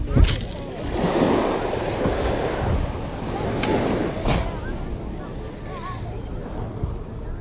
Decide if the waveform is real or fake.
real